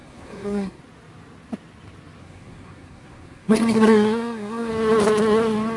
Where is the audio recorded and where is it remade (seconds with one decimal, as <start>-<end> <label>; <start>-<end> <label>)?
0.0-0.8 remade; 0.8-2.2 recorded; 2.2-4.7 remade; 4.7-5.8 recorded